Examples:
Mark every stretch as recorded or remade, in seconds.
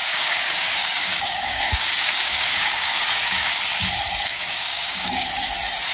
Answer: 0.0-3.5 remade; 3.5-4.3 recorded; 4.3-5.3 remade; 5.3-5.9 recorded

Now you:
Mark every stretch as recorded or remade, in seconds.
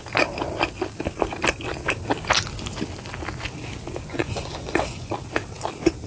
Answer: 0.0-4.1 recorded; 4.1-5.1 remade; 5.1-6.1 recorded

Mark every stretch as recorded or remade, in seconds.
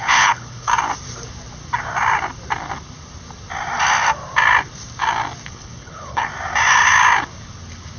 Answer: 0.0-0.7 remade; 0.7-5.5 recorded; 5.5-6.3 remade; 6.3-8.0 recorded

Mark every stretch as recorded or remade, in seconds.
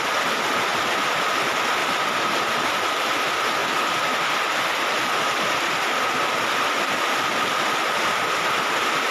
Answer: 0.0-9.1 recorded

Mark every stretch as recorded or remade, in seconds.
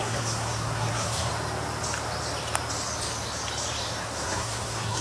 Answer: 0.0-1.3 remade; 1.3-4.0 recorded; 4.0-5.0 remade